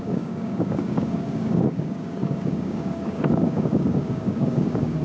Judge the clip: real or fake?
fake